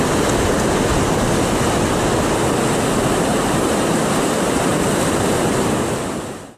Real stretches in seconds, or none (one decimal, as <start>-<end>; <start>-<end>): 0.0-3.3; 5.7-6.6